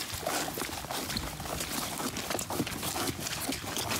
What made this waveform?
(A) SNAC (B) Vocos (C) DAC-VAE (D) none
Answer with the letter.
D